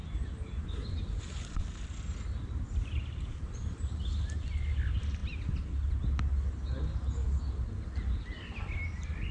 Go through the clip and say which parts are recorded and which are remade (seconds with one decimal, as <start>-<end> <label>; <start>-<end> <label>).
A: 0.0-9.3 recorded